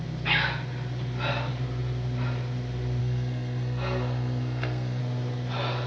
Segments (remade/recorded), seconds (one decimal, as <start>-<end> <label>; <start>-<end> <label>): 0.0-3.0 recorded; 3.0-5.0 remade; 5.0-5.9 recorded